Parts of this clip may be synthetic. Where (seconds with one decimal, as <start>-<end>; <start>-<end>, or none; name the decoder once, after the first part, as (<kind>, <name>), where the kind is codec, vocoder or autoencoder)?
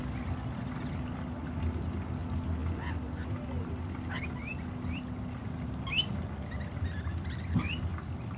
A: none